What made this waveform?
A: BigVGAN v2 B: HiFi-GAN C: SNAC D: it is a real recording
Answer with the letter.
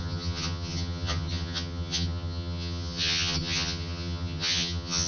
B